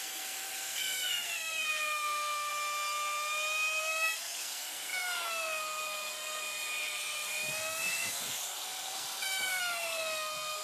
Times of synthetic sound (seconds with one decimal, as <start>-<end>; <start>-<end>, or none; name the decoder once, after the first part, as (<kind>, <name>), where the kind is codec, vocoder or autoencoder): 0.0-2.5 (codec, SNAC); 3.8-10.6